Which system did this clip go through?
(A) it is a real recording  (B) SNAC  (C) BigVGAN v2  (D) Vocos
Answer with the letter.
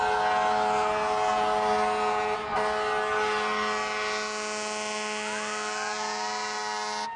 A